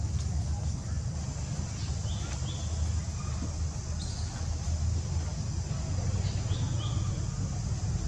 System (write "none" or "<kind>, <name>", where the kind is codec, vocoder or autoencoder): none